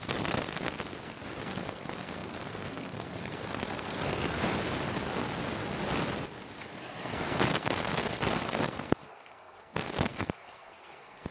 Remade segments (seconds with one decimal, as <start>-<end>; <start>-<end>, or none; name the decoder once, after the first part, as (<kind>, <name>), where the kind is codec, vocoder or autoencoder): 0.0-4.4 (codec, SNAC); 6.6-11.3